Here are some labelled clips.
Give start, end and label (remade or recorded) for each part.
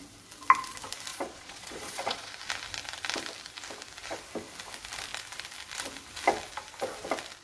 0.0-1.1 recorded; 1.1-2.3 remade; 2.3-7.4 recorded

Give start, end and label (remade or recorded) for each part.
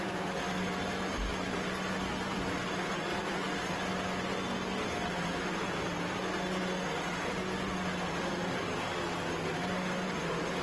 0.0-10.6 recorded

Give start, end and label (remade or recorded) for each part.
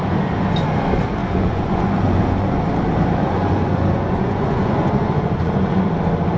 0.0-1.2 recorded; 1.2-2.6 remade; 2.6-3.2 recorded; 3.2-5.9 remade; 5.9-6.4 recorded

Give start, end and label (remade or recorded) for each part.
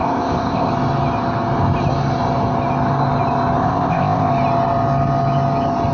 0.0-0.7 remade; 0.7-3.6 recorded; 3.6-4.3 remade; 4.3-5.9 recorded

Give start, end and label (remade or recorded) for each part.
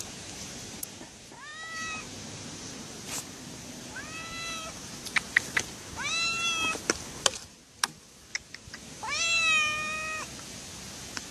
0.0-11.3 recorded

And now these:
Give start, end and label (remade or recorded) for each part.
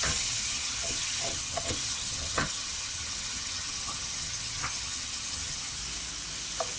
0.0-5.8 remade; 5.8-6.8 recorded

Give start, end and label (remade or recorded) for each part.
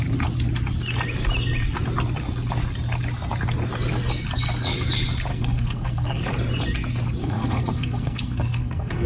0.0-5.3 recorded; 5.3-6.3 remade; 6.3-7.2 recorded; 7.2-9.1 remade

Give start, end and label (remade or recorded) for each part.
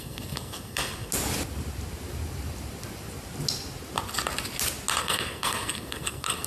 0.0-1.1 remade; 1.1-5.0 recorded; 5.0-6.5 remade